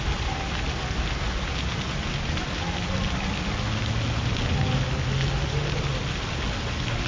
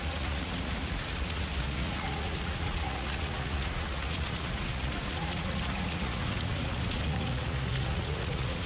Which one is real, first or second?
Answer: first